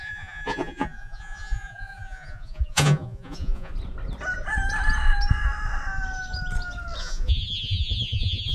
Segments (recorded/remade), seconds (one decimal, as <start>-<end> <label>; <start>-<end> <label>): 0.0-3.7 remade; 3.7-7.0 recorded; 7.0-8.5 remade